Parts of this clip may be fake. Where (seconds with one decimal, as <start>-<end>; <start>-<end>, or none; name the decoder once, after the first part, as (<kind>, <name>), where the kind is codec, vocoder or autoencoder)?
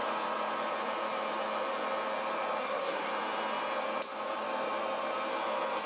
2.6-3.1 (codec, SNAC)